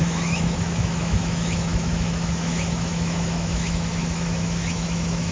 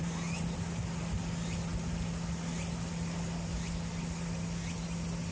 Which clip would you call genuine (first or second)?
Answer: second